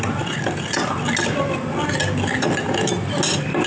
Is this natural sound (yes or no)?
yes